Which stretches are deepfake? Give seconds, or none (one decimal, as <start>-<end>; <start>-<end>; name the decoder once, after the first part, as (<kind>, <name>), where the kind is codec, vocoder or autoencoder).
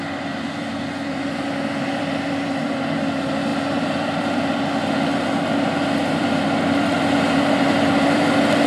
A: 0.0-8.7 (vocoder, BigVGAN v2)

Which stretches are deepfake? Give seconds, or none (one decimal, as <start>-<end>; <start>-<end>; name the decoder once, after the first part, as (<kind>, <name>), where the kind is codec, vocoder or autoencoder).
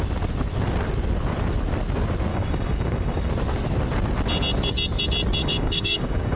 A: 2.3-3.3 (codec, DAC); 5.4-6.4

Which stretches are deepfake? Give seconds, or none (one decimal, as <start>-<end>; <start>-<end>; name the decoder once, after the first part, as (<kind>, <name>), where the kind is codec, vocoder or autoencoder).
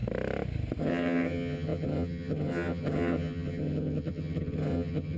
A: 0.8-5.2 (vocoder, HiFi-GAN)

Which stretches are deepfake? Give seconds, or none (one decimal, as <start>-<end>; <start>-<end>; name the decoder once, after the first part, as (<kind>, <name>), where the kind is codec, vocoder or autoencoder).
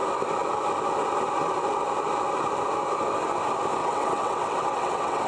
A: 3.8-5.3 (vocoder, WaveNeXt)